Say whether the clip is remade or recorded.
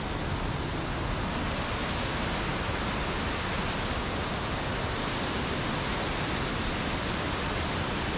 recorded